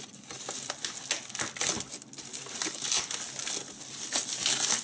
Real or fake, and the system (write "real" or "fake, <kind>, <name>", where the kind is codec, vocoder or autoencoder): real